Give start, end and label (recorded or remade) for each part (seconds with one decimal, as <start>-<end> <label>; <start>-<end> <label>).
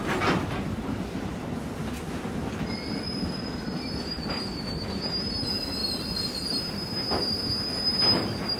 0.0-5.8 recorded; 5.8-6.7 remade; 6.7-8.6 recorded